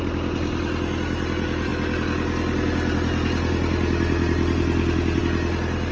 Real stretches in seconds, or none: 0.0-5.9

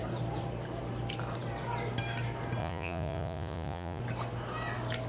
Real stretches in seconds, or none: 0.0-2.6; 4.0-5.1

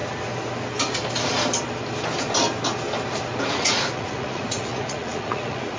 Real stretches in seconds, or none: 0.0-3.5

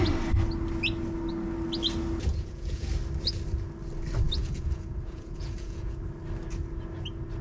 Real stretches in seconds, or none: 0.0-2.3; 2.9-4.4; 6.0-7.4